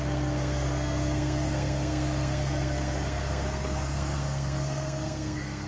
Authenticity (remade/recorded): remade